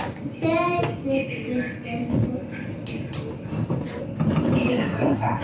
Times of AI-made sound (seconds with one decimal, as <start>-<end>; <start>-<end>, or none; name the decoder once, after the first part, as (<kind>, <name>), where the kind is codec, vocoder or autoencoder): 4.7-5.4 (codec, SNAC)